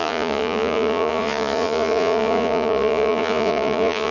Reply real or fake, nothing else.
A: fake